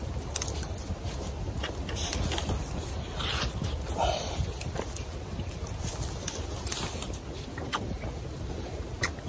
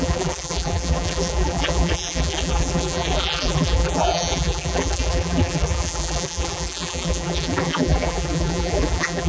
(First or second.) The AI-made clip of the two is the second